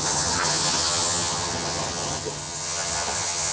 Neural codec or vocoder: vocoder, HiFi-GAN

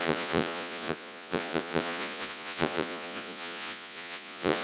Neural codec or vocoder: vocoder, Vocos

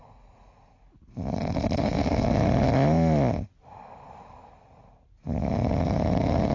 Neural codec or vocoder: none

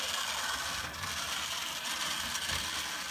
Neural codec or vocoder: none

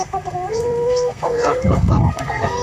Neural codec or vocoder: codec, SNAC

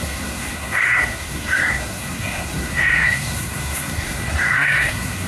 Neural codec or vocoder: codec, SNAC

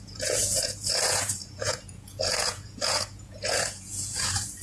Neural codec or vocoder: vocoder, Vocos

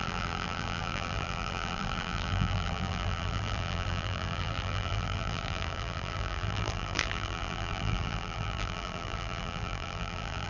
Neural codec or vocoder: vocoder, BigVGAN v2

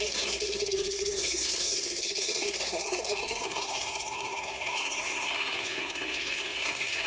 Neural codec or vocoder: codec, SNAC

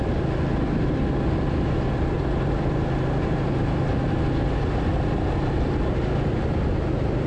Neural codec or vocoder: none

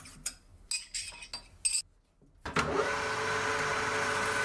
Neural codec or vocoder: none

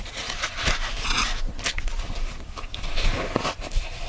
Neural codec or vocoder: none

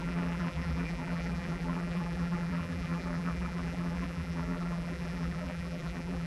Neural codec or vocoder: vocoder, BigVGAN v2